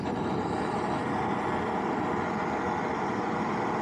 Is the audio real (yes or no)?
yes